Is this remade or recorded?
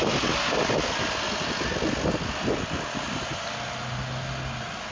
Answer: recorded